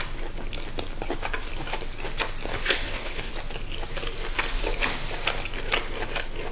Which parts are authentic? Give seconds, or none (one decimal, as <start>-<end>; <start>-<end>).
0.0-2.5; 3.3-6.5